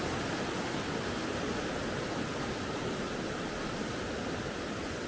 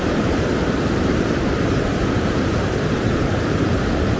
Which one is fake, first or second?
second